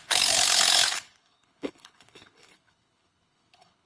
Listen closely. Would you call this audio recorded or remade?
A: remade